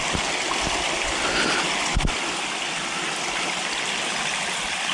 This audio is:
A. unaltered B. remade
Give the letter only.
A